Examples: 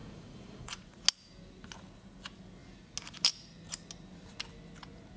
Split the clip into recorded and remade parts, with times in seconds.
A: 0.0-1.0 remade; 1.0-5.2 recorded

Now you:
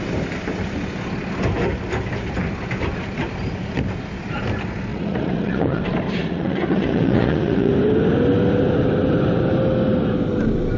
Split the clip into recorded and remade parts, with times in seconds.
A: 0.0-4.9 recorded; 4.9-5.8 remade; 5.8-6.2 recorded; 6.2-7.7 remade; 7.7-10.8 recorded